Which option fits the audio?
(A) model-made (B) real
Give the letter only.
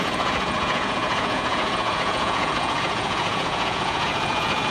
A